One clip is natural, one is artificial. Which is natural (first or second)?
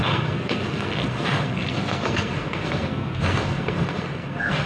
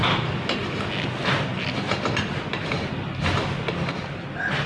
second